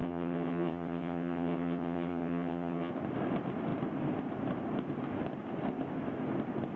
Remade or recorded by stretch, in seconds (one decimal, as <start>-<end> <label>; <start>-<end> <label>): 0.0-2.9 remade; 2.9-6.8 recorded